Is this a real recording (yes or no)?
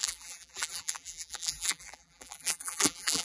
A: no